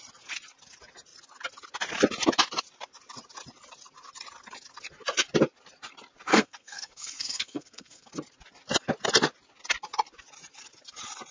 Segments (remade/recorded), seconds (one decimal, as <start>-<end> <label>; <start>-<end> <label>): 0.0-6.3 recorded; 6.3-8.1 remade; 8.1-11.3 recorded